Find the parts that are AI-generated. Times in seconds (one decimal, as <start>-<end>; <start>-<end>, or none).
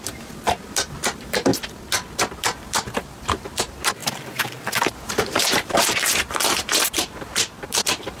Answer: 0.0-1.5; 2.4-8.2